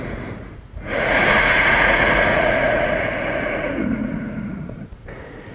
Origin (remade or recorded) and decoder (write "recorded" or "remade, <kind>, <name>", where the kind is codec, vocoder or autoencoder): remade, vocoder, Vocos